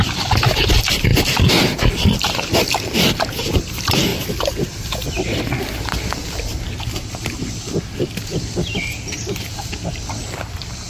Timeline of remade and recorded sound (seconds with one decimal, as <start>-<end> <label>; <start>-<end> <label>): 0.0-4.1 remade; 4.1-5.4 recorded; 5.4-6.2 remade; 6.2-10.2 recorded; 10.2-10.9 remade